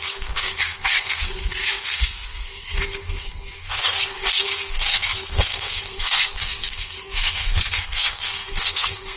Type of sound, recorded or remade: remade